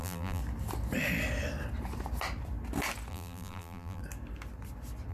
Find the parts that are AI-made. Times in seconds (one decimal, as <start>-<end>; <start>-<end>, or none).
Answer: 0.0-0.4; 3.1-4.0